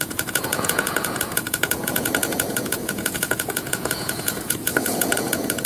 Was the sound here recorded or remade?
remade